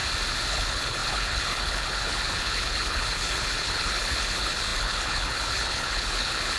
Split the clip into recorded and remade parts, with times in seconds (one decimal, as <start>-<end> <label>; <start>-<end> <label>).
0.0-0.5 recorded; 0.5-6.6 remade